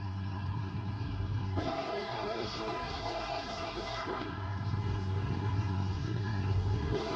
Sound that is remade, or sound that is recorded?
remade